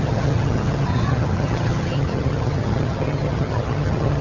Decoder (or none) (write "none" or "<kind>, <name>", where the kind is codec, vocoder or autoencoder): vocoder, HiFi-GAN